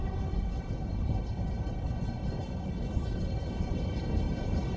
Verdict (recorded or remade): remade